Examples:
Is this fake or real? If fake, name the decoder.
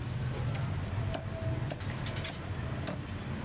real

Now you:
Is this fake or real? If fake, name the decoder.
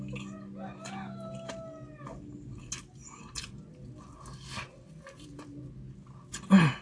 real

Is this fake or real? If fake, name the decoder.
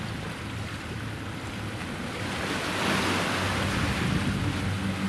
real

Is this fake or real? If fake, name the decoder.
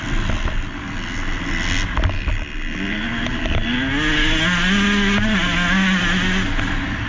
real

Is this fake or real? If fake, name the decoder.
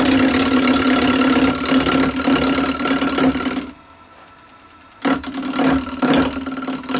real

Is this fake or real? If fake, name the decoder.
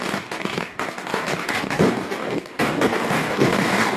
fake, codec, DAC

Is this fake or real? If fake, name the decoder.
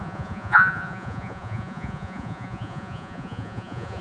fake, vocoder, Vocos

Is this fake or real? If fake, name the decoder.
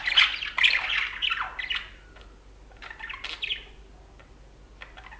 real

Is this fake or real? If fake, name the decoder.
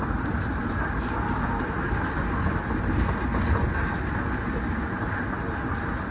real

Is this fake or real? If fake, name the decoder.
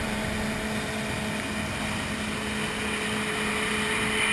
real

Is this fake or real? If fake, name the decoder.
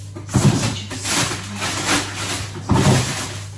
real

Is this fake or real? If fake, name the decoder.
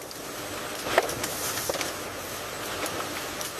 real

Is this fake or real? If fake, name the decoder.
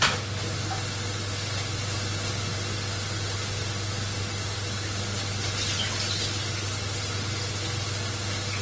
real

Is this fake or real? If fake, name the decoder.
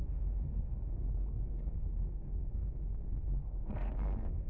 fake, codec, SNAC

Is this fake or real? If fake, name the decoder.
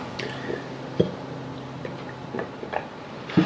real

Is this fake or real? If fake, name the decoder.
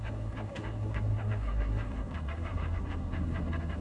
fake, codec, SNAC